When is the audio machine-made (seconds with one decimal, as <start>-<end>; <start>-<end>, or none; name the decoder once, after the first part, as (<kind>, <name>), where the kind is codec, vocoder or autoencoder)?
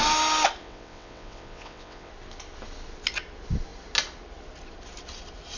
0.6-2.1 (vocoder, WaveNeXt)